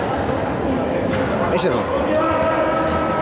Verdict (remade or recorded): recorded